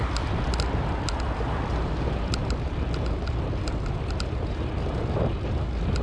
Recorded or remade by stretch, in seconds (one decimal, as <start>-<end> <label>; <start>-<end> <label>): 0.0-6.0 recorded